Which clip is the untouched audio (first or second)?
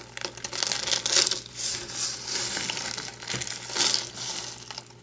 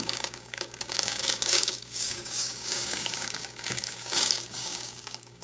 first